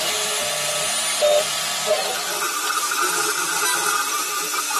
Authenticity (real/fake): real